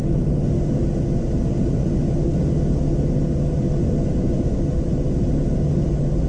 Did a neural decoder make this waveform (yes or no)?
no